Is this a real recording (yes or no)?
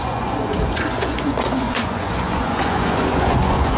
no